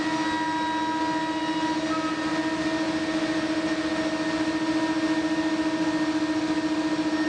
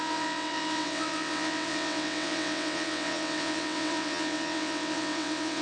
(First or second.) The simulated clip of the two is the second